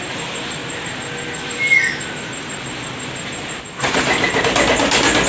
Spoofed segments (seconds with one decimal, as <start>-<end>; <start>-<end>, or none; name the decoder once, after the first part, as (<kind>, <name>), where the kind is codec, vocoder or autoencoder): none